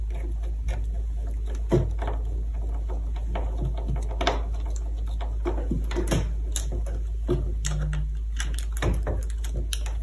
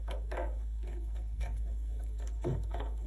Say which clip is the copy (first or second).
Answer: second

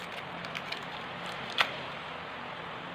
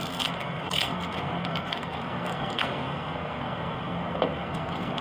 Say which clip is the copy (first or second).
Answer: second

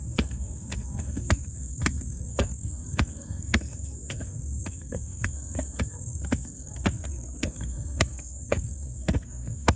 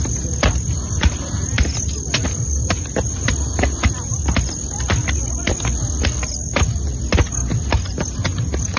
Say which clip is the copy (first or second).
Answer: first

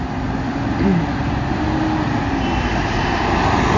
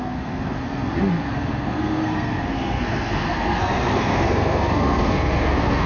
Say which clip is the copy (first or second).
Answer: second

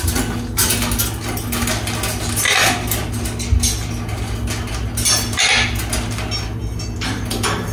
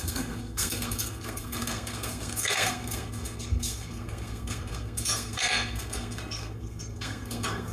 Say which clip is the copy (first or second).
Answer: second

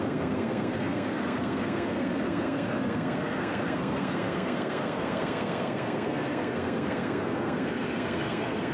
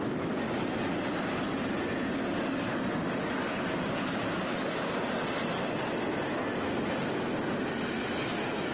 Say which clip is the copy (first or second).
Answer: first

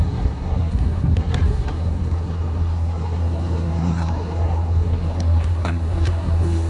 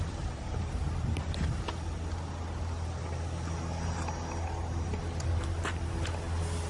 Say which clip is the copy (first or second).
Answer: first